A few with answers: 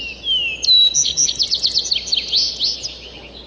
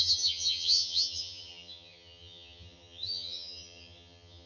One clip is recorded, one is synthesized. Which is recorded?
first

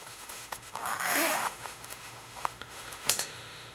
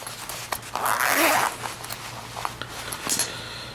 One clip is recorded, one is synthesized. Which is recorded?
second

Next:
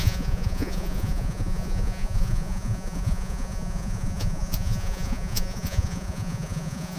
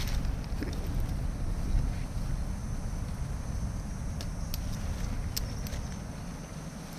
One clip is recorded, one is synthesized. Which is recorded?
second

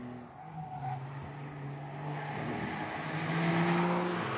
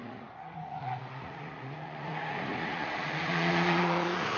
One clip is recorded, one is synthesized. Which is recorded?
first